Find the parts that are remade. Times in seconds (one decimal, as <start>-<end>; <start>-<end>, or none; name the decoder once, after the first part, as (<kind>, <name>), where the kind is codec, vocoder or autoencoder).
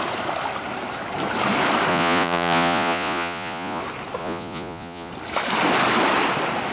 1.9-3.8 (vocoder, Vocos); 4.2-5.1